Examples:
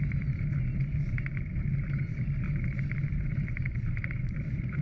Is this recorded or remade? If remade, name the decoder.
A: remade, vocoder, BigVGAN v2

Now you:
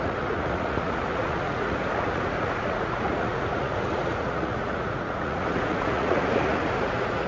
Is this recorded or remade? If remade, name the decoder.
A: remade, vocoder, Vocos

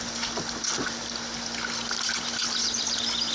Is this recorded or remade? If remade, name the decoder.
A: recorded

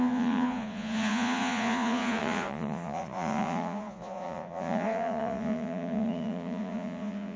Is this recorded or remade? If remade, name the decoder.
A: remade, vocoder, Vocos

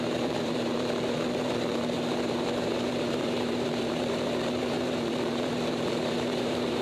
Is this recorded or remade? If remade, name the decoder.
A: remade, vocoder, BigVGAN v2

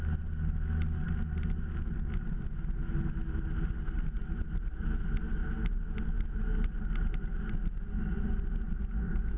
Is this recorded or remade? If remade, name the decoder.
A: recorded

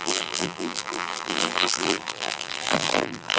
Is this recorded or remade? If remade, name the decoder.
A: remade, vocoder, BigVGAN v2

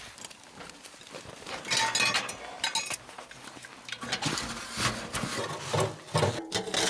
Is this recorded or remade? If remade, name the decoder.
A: recorded